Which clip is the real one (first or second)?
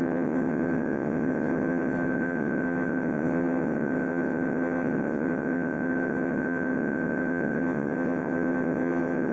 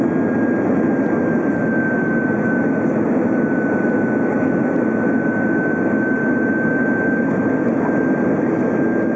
second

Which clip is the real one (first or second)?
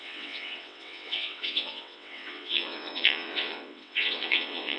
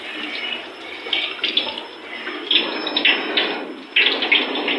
second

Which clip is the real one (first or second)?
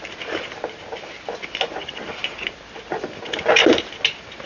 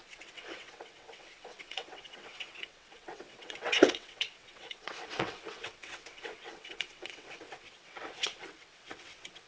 first